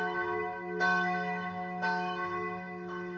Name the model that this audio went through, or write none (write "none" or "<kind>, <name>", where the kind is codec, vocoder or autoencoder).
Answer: autoencoder, DAC-VAE